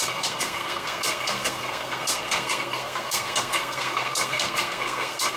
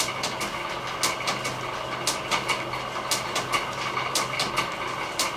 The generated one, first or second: first